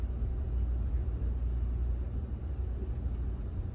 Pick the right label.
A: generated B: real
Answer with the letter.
B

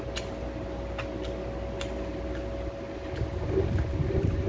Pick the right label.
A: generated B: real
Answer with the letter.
B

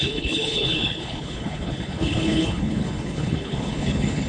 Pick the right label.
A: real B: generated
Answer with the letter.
B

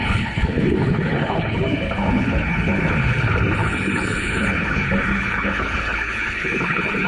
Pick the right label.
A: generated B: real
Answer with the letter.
A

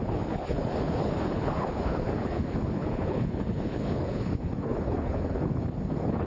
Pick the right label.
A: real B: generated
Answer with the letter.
B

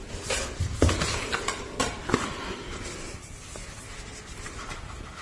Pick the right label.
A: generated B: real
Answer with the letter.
B